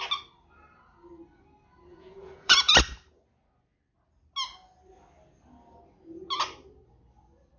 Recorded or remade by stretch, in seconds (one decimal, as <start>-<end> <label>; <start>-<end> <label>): 0.0-1.9 recorded; 1.9-2.7 remade; 2.7-7.6 recorded